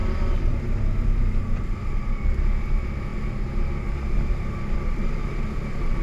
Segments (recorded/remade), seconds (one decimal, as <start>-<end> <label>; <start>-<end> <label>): 0.0-3.1 recorded; 3.1-5.1 remade; 5.1-6.0 recorded